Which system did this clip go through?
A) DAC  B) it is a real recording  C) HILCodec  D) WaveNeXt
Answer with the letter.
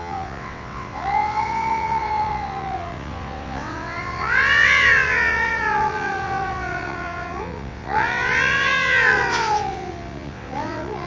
D